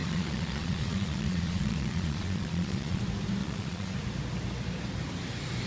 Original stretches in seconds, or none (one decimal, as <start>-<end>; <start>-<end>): 3.0-3.4; 3.9-5.7